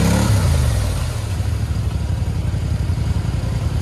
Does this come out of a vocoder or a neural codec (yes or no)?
no